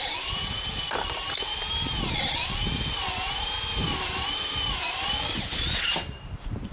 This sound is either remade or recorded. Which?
recorded